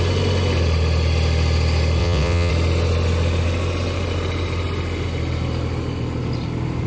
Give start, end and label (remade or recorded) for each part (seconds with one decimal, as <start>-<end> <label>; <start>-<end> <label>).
0.0-2.0 recorded; 2.0-2.5 remade; 2.5-6.9 recorded